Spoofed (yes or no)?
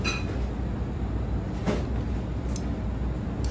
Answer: no